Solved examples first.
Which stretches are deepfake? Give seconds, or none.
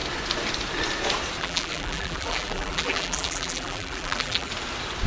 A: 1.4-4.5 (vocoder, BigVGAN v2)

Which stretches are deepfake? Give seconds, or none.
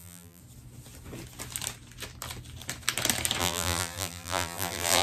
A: 0.0-0.4 (vocoder, BigVGAN v2); 3.4-5.0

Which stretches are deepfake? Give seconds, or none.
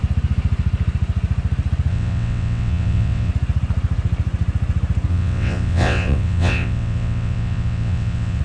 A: 1.9-3.3 (vocoder, WaveNeXt); 5.1-8.4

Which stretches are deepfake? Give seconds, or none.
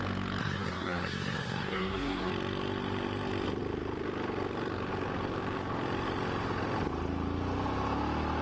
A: 0.4-2.3 (codec, SNAC)